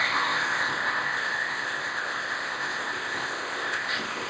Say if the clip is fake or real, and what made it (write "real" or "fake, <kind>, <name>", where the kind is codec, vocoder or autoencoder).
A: fake, codec, ZipCodec